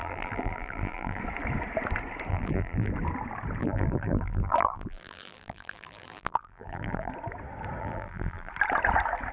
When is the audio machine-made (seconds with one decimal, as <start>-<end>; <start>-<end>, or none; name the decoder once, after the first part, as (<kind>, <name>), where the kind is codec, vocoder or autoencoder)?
0.0-1.2 (vocoder, BigVGAN v2); 2.3-2.9; 3.6-7.1; 7.8-8.5